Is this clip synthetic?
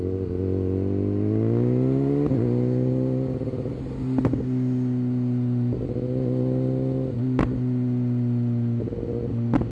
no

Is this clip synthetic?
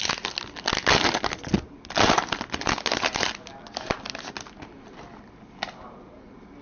no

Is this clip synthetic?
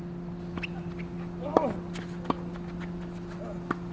no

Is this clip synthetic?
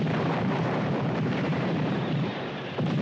yes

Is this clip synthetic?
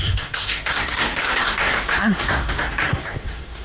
yes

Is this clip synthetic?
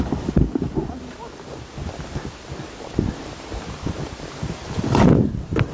no